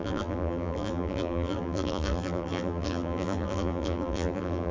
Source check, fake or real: fake